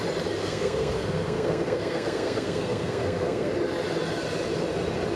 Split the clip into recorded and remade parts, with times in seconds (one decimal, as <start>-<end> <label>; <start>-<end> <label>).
0.0-0.4 recorded; 0.4-3.5 remade; 3.5-5.2 recorded